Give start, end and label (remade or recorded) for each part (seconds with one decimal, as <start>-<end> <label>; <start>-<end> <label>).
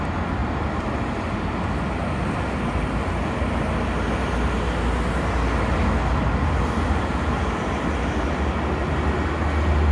0.0-9.9 recorded